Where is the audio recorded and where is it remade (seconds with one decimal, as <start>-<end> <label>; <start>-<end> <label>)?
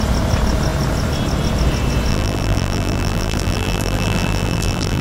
0.0-2.1 recorded; 2.1-5.0 remade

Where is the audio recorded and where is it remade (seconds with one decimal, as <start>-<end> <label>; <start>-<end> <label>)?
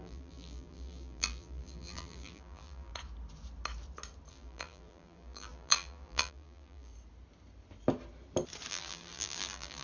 0.0-2.9 remade; 2.9-4.3 recorded; 4.3-6.9 remade; 6.9-8.7 recorded; 8.7-9.8 remade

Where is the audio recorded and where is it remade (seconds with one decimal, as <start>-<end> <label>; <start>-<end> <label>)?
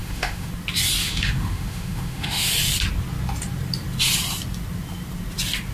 0.0-0.5 remade; 0.5-1.0 recorded; 1.0-2.5 remade; 2.5-5.7 recorded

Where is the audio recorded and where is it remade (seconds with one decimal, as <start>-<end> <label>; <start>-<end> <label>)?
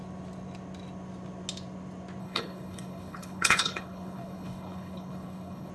0.0-2.2 recorded; 2.2-5.7 remade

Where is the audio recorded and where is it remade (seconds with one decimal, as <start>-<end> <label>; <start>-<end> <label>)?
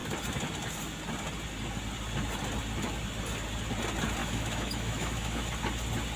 0.0-4.2 recorded; 4.2-5.5 remade; 5.5-6.2 recorded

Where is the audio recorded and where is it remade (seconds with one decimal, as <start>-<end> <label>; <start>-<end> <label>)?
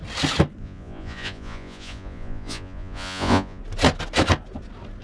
0.0-0.6 recorded; 0.6-3.6 remade; 3.6-5.0 recorded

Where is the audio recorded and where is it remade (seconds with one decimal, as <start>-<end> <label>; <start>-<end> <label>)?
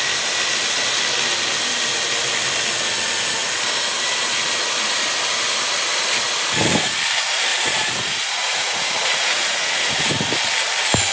0.0-7.5 recorded; 7.5-9.9 remade; 9.9-11.1 recorded